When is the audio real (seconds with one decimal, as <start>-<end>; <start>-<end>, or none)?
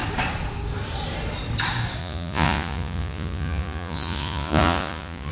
0.0-2.0